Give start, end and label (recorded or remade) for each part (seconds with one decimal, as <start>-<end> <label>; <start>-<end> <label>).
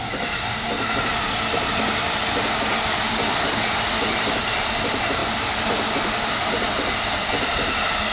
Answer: 0.0-8.1 recorded